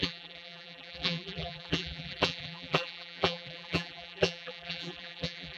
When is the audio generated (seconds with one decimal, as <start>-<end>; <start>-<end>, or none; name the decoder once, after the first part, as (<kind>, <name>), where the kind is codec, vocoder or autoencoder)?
0.0-5.6 (vocoder, BigVGAN v2)